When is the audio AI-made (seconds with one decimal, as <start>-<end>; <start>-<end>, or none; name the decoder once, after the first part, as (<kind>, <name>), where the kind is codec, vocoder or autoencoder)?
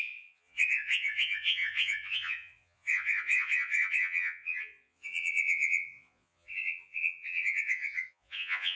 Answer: 0.0-8.8 (vocoder, Vocos)